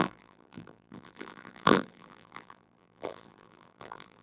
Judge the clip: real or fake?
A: fake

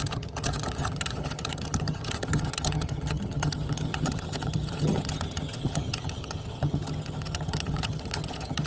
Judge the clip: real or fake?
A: fake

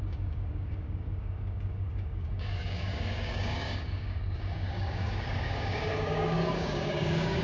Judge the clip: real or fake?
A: fake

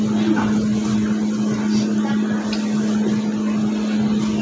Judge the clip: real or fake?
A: real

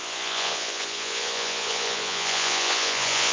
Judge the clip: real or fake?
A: fake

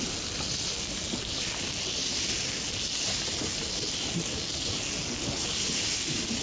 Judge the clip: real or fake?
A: real